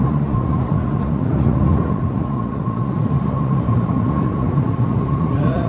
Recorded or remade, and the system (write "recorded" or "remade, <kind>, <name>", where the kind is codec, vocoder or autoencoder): remade, vocoder, Vocos